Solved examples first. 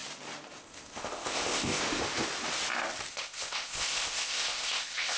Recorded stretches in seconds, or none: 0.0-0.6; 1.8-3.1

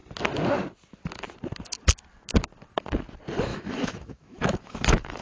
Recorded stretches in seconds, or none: 0.0-3.5